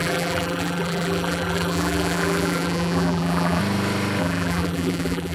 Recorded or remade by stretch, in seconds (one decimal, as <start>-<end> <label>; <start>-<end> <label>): 0.0-3.6 remade; 3.6-4.2 recorded; 4.2-5.3 remade